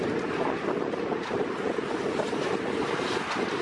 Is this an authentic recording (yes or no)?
no